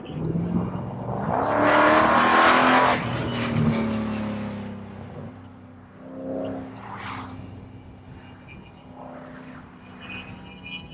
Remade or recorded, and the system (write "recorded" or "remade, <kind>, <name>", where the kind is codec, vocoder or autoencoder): recorded